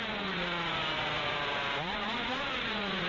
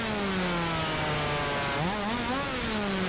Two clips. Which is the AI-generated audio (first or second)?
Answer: first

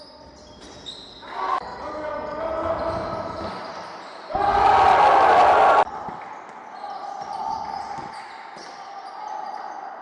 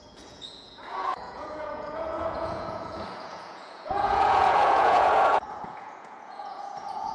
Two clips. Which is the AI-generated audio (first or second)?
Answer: second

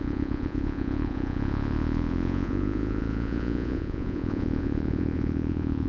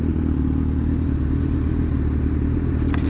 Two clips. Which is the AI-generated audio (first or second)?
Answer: first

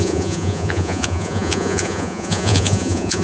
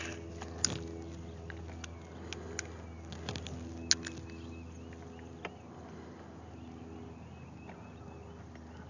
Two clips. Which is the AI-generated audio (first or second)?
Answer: first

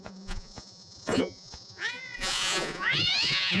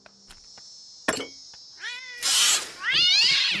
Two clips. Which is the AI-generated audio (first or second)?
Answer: first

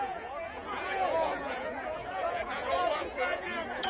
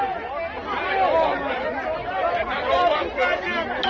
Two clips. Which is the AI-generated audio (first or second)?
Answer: first